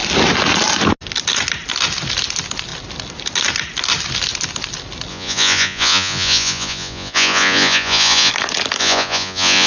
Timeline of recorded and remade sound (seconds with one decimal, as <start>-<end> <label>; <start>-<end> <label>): 0.0-5.1 recorded; 5.1-8.3 remade; 8.3-8.8 recorded; 8.8-9.7 remade